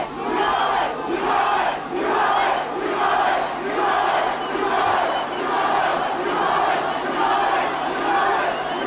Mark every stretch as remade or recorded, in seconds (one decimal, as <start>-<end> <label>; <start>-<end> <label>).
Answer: 0.0-8.9 recorded